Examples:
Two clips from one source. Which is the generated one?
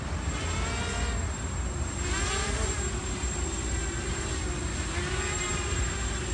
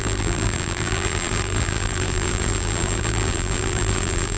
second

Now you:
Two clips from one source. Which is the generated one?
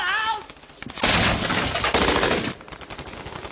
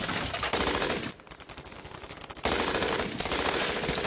second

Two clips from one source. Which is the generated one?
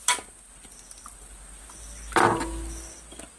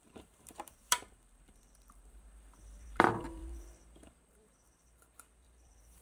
second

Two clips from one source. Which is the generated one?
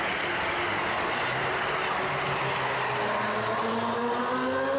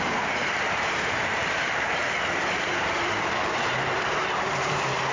second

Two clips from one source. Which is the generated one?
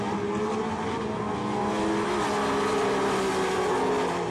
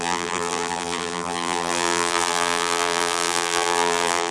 second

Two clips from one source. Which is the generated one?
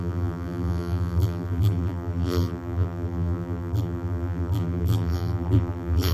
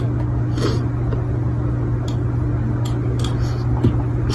first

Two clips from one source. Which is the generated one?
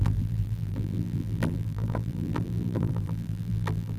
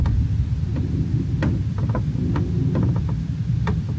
first